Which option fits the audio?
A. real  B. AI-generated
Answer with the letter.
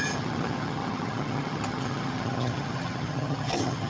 B